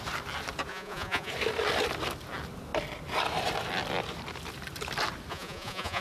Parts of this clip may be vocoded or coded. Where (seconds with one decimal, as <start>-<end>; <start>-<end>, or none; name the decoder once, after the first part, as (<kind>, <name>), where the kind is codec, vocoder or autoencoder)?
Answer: 0.7-1.3 (vocoder, Vocos); 5.3-6.0